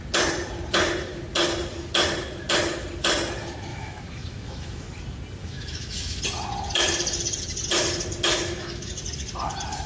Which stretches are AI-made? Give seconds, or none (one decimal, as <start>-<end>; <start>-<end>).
3.7-4.9; 5.4-6.2; 8.3-9.0